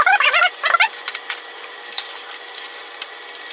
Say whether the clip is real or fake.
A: real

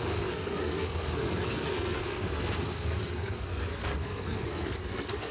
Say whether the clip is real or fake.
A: fake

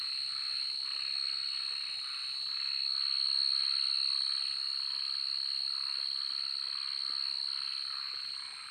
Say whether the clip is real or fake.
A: real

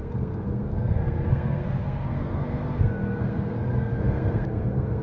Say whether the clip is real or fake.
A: fake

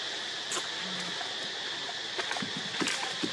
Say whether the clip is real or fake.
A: real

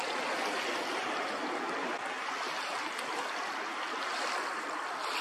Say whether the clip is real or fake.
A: real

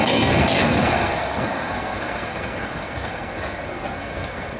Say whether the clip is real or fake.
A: fake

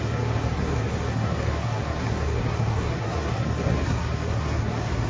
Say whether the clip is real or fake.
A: fake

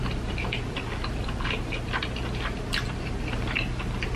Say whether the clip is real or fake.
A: real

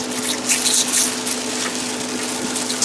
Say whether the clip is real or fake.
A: real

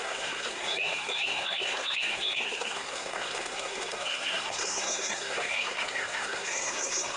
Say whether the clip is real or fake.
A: fake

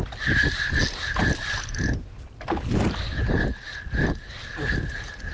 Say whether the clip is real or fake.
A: real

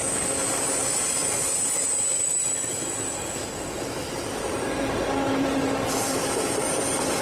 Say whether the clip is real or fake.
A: real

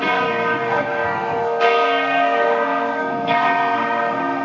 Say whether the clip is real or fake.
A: fake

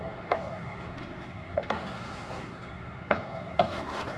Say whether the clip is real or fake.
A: fake